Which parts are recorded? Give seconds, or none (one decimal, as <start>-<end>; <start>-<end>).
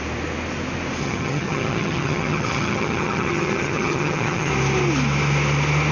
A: 0.0-1.0; 4.5-5.9